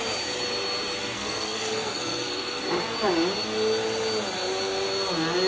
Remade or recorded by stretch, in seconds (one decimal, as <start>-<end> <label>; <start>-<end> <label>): 0.0-1.0 recorded; 1.0-2.6 remade; 2.6-5.5 recorded